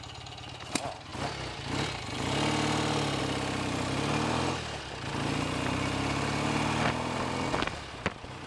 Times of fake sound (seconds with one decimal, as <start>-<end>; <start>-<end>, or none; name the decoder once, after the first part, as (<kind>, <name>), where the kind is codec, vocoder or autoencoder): none